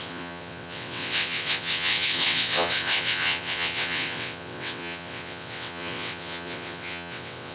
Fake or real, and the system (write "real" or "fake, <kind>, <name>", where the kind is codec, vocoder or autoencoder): fake, vocoder, WaveNeXt